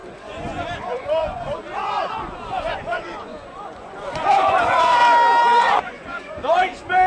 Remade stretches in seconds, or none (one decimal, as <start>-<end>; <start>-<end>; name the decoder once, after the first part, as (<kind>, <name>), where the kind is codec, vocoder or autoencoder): 0.0-5.0 (vocoder, Vocos); 5.6-7.1